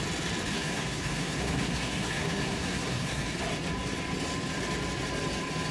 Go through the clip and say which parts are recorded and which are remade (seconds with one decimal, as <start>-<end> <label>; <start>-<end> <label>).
0.0-0.5 recorded; 0.5-3.4 remade; 3.4-5.7 recorded